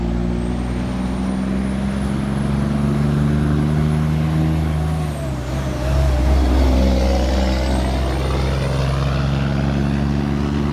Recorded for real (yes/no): yes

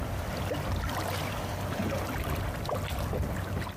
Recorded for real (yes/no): yes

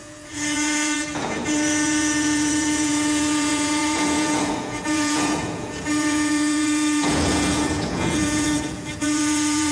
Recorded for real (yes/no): no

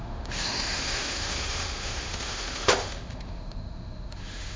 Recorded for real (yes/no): no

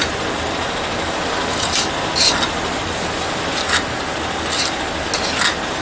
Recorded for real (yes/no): yes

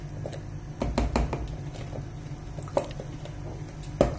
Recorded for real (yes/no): yes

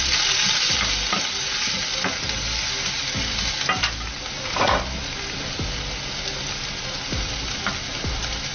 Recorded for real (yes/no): yes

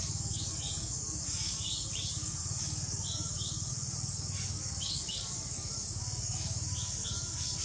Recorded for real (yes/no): no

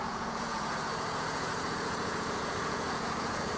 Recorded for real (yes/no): no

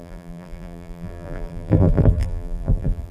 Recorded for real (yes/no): no